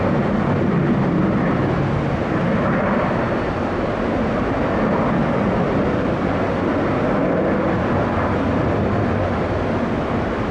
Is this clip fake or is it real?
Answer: real